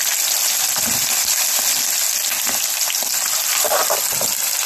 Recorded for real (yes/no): yes